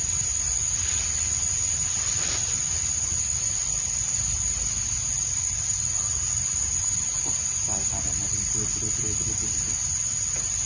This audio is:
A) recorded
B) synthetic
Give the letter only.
A